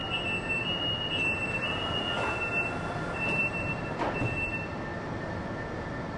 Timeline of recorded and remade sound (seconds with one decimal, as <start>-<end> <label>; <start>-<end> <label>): 0.0-3.4 recorded; 3.4-3.9 remade; 3.9-4.9 recorded; 4.9-6.2 remade